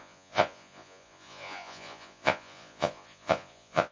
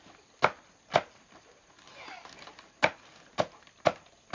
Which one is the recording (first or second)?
second